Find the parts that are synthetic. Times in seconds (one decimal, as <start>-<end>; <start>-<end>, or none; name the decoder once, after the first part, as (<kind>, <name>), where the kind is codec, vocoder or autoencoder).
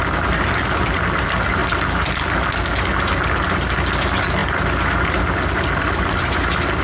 none